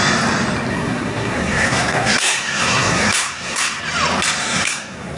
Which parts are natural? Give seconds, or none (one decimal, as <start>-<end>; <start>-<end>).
0.0-0.7; 3.8-4.4